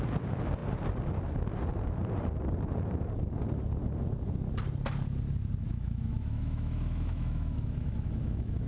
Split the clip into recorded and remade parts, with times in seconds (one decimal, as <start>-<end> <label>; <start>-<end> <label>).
0.0-5.7 recorded; 5.7-8.7 remade